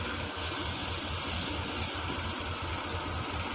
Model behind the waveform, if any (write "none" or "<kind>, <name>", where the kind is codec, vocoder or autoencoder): none